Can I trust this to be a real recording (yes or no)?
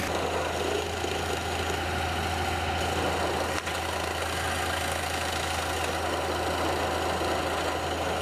yes